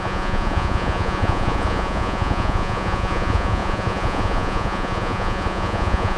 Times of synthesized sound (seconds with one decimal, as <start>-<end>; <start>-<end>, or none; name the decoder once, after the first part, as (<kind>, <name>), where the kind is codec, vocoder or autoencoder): 0.0-6.2 (vocoder, Vocos)